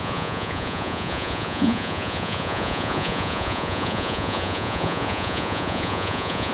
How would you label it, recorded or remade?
remade